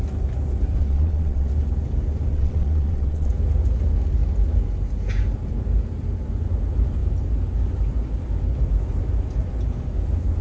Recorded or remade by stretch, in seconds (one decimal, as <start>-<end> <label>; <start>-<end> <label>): 0.0-0.8 recorded; 0.8-1.5 remade; 1.5-2.3 recorded; 2.3-3.3 remade; 3.3-10.4 recorded